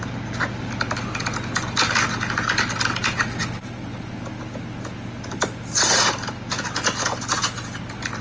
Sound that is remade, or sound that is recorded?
recorded